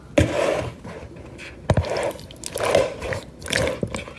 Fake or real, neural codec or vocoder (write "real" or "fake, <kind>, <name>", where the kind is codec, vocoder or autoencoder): real